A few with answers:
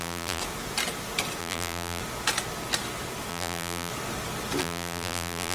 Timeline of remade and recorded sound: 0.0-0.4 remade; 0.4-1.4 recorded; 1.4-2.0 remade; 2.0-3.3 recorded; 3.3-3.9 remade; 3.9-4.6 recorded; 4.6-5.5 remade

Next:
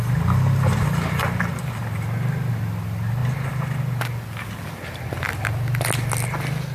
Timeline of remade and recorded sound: 0.0-6.7 recorded

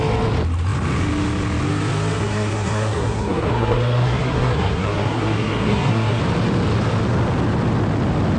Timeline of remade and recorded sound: 0.0-2.2 recorded; 2.2-6.2 remade; 6.2-8.4 recorded

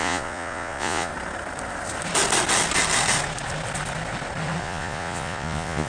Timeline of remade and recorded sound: 0.0-1.1 remade; 1.1-4.6 recorded; 4.6-5.9 remade

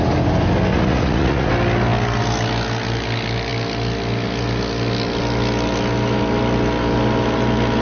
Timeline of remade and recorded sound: 0.0-0.7 recorded; 0.7-1.5 remade; 1.5-7.8 recorded

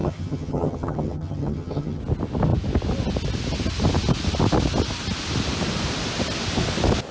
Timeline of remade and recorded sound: 0.0-2.0 remade; 2.0-7.1 recorded

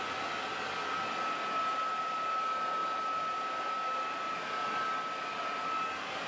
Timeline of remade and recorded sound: 0.0-6.3 recorded

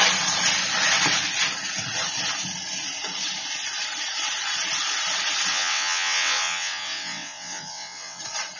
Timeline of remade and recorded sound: 0.0-5.5 recorded; 5.5-8.2 remade; 8.2-8.6 recorded